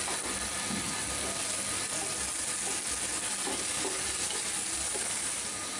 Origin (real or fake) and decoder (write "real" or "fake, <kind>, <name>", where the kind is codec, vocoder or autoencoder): real